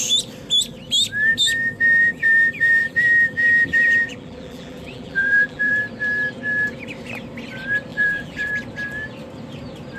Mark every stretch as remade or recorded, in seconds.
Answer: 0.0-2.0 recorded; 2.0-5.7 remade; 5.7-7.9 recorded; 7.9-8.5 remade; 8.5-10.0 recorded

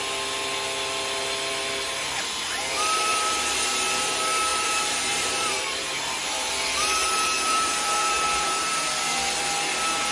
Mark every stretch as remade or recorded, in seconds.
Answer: 0.0-3.1 recorded; 3.1-3.7 remade; 3.7-4.5 recorded; 4.5-6.5 remade; 6.5-7.0 recorded; 7.0-9.1 remade; 9.1-10.1 recorded